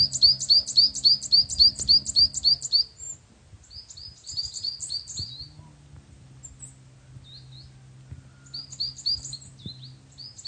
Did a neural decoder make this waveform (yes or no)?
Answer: no